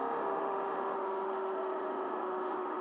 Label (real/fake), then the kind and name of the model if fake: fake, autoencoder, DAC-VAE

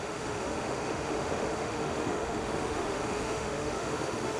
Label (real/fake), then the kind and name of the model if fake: fake, autoencoder, DAC-VAE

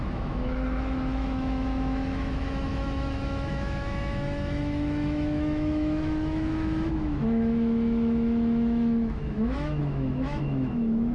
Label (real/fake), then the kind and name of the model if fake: fake, autoencoder, DAC-VAE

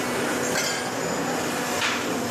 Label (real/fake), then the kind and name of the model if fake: real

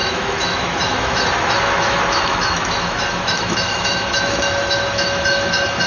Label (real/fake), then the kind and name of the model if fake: fake, autoencoder, DAC-VAE